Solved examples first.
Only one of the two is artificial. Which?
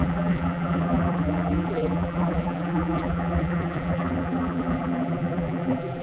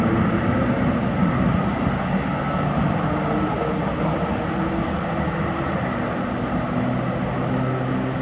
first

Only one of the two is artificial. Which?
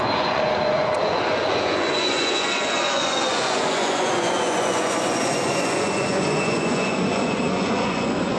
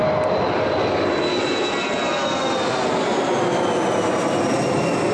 first